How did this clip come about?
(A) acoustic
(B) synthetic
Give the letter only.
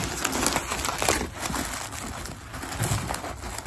A